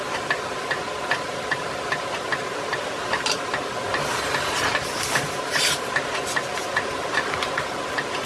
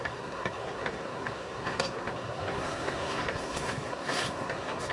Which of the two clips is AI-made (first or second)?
second